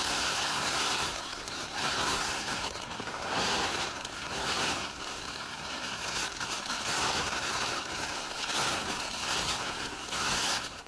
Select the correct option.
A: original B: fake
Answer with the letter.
B